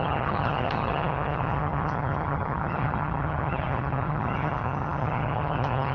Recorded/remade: remade